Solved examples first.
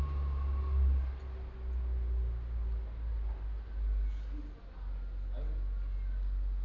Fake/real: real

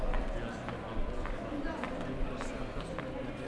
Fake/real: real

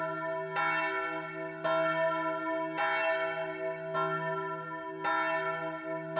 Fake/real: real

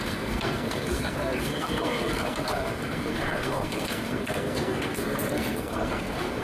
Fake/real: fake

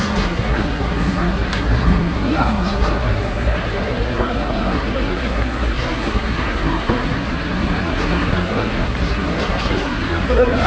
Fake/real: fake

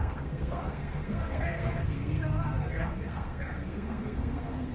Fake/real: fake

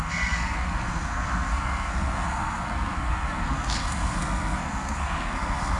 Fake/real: fake